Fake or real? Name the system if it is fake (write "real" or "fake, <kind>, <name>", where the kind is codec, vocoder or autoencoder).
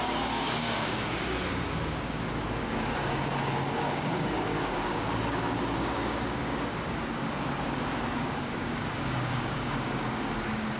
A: fake, codec, DAC